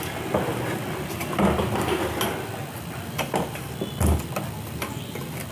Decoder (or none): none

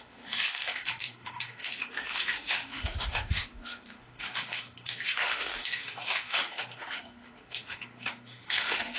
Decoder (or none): autoencoder, DAC-VAE